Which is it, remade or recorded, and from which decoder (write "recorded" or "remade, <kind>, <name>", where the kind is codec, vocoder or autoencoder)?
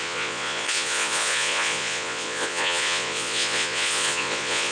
remade, vocoder, Vocos